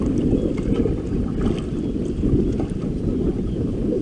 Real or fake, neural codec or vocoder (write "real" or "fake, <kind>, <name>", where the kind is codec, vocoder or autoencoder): real